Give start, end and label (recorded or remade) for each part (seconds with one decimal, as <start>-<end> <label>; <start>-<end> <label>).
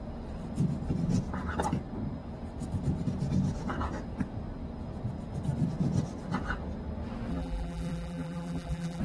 0.0-7.3 recorded; 7.3-9.0 remade